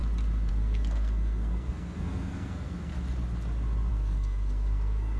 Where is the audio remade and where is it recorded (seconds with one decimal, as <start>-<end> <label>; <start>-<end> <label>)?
0.0-0.5 recorded; 0.5-2.9 remade; 2.9-3.9 recorded; 3.9-5.2 remade